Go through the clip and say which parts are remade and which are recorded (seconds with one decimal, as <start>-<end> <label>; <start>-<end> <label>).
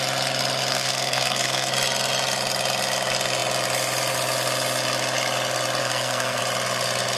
0.0-0.7 recorded; 0.7-1.7 remade; 1.7-5.8 recorded; 5.8-6.4 remade; 6.4-7.2 recorded